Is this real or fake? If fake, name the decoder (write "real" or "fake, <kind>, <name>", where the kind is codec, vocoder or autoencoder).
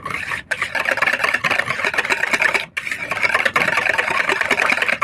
real